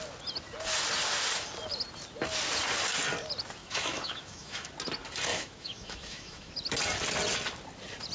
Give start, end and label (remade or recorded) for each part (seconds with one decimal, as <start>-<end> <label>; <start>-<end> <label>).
0.0-3.6 recorded; 3.6-4.7 remade; 4.7-5.3 recorded; 5.3-6.5 remade; 6.5-8.1 recorded